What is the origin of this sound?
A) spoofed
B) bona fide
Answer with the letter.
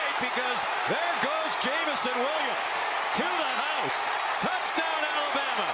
B